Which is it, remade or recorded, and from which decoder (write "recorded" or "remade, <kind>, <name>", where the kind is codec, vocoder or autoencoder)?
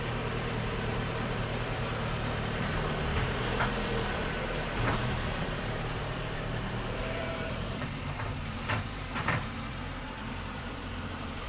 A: remade, vocoder, BigVGAN v2